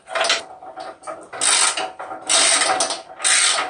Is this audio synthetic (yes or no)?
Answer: no